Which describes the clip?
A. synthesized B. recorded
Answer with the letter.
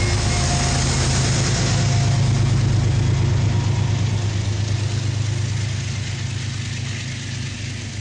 B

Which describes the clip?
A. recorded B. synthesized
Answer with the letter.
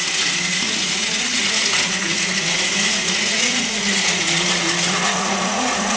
B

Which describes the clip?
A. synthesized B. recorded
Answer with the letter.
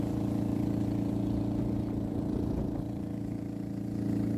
B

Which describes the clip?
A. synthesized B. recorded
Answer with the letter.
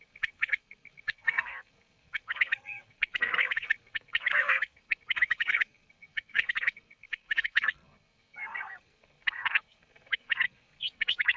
A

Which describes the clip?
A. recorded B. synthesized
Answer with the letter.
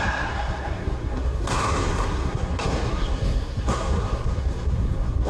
B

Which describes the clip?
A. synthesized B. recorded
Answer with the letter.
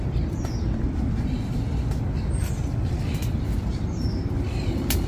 B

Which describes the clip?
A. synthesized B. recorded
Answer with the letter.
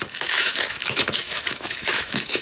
A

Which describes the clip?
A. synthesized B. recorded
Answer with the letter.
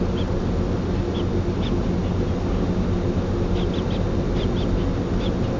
B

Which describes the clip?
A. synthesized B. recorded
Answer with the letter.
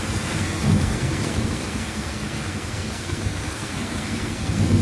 A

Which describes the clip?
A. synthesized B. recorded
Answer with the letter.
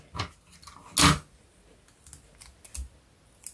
B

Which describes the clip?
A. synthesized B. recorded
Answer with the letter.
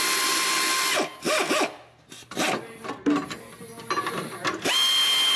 B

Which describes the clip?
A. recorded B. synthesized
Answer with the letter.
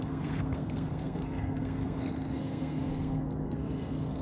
B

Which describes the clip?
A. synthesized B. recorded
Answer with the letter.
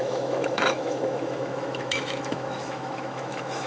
A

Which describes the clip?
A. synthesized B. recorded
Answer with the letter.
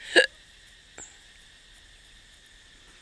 B